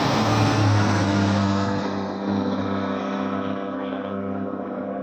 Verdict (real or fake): fake